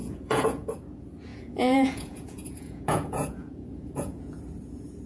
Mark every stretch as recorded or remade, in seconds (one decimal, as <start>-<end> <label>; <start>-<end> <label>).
0.0-0.7 remade; 0.7-1.3 recorded; 1.3-4.4 remade; 4.4-5.1 recorded